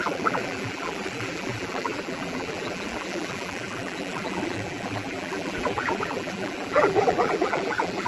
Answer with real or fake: fake